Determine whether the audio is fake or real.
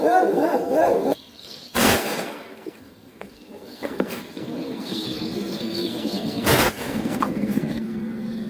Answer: fake